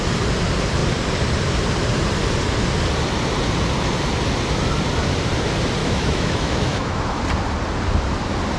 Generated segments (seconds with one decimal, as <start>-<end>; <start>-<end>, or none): 5.8-7.2

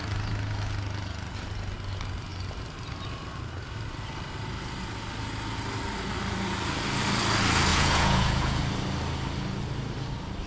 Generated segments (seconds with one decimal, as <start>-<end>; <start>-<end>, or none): 7.7-8.6

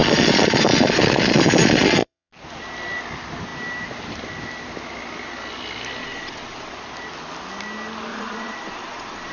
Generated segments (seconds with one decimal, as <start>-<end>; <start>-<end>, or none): 0.0-2.3; 6.0-6.7; 8.1-9.3

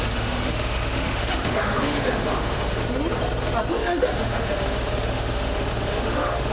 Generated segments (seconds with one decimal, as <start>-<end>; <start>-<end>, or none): 0.0-2.8; 3.7-6.5